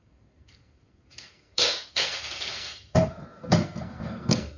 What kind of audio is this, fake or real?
fake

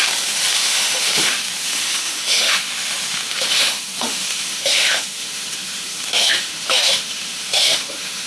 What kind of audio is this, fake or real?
fake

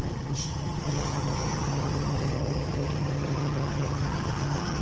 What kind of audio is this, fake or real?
fake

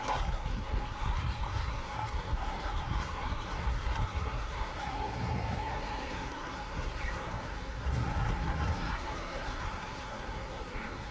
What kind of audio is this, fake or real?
fake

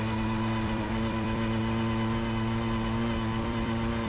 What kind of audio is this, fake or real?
fake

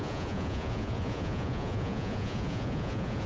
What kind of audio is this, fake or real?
fake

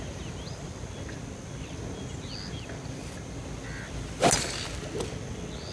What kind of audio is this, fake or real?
real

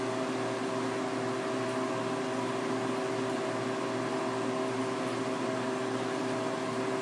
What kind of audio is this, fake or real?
fake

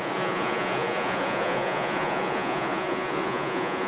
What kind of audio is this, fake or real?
fake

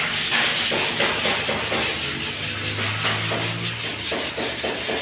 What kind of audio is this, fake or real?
real